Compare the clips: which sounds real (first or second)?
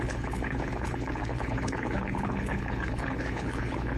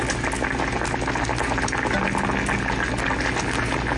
second